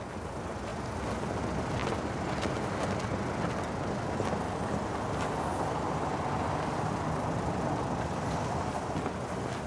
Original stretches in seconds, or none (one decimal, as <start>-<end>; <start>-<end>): 0.0-1.8; 2.4-5.5; 7.7-9.7